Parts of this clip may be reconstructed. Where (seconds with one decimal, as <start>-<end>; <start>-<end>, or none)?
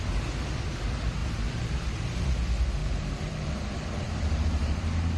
1.2-2.3; 2.8-4.8